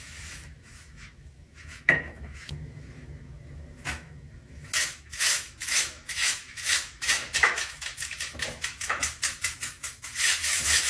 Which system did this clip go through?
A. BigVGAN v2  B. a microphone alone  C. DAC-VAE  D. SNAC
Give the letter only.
C